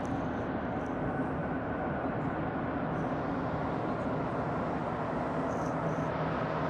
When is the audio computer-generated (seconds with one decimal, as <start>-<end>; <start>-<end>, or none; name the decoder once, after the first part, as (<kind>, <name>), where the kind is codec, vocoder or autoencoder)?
none

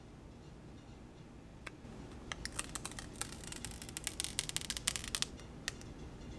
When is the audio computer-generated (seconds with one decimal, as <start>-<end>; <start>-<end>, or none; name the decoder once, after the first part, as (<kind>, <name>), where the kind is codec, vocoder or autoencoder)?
none

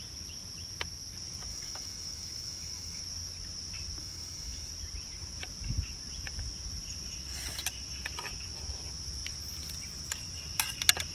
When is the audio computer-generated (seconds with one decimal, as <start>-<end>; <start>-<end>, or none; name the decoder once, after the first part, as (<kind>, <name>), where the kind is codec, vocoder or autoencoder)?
1.5-3.0 (autoencoder, DAC-VAE); 4.0-4.7

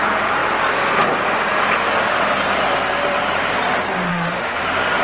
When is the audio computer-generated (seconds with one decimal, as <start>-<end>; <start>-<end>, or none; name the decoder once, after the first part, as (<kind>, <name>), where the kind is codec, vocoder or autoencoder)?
4.1-4.6 (autoencoder, DAC-VAE)

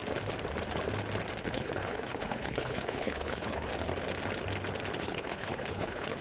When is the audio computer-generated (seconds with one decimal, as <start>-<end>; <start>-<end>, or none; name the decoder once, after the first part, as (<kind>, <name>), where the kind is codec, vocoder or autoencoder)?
1.4-3.7 (codec, HILCodec); 5.0-6.2

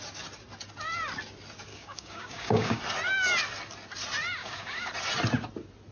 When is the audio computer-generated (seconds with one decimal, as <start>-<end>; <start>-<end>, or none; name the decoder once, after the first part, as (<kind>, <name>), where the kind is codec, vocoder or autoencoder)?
1.7-2.8 (codec, DAC); 4.4-4.9

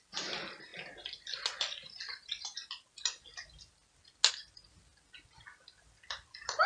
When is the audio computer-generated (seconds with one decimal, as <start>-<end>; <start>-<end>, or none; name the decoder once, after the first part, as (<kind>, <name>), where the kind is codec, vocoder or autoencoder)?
none